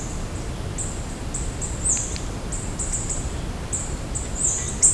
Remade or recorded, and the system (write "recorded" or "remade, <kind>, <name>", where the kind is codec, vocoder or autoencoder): recorded